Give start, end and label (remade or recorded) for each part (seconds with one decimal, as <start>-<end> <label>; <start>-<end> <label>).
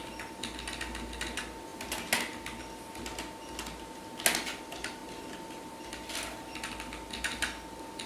0.0-8.1 recorded